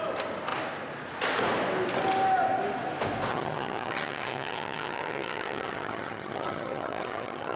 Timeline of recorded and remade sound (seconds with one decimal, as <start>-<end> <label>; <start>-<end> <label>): 0.0-3.3 recorded; 3.3-7.6 remade